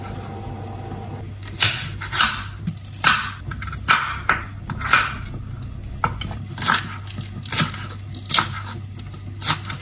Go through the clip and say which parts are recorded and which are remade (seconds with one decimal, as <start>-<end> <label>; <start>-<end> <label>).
0.0-9.8 recorded